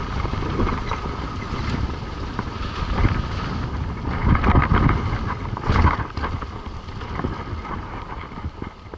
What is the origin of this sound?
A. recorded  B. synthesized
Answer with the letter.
A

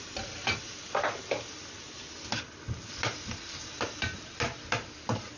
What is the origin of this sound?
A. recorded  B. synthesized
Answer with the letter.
A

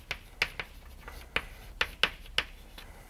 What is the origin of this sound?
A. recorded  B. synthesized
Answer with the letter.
A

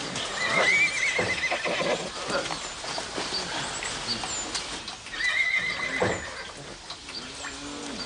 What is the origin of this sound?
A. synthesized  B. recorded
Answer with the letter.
B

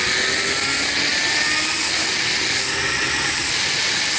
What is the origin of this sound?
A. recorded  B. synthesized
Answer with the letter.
A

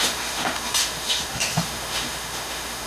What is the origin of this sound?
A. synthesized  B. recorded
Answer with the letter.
A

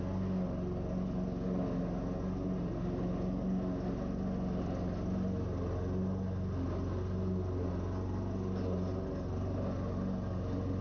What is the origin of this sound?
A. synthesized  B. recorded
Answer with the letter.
B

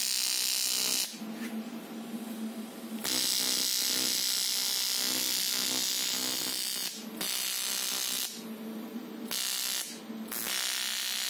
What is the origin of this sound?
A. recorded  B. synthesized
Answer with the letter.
A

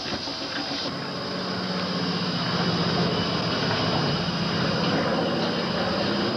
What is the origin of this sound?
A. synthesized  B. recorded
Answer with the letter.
B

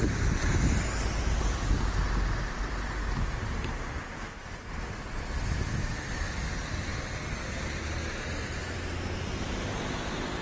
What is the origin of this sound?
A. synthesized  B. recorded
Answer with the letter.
B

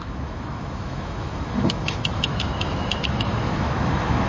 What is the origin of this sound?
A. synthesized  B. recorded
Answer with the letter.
A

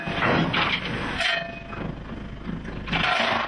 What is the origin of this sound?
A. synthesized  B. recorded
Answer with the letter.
B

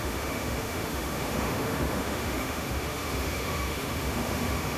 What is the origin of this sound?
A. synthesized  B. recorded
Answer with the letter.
A